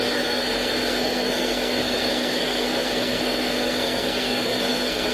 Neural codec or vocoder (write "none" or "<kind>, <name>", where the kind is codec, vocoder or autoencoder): codec, SNAC